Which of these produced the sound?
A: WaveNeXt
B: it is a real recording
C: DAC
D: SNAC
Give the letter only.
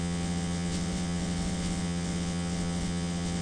A